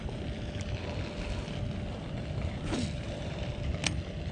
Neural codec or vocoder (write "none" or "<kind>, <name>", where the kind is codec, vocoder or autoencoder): none